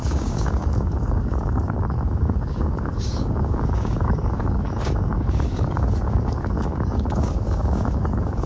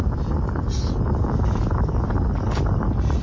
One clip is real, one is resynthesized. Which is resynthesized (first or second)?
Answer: first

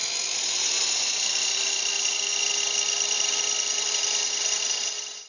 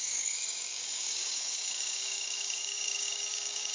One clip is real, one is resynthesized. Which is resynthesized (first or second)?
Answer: second